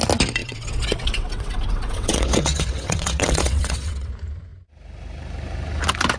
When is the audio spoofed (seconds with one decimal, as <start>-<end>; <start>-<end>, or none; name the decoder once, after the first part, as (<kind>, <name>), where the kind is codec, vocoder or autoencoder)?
0.4-4.1 (vocoder, WaveNeXt)